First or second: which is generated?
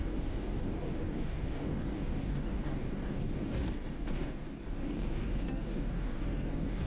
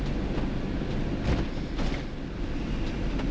first